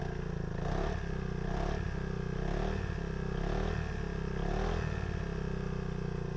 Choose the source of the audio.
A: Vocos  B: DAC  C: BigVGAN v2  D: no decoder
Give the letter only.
D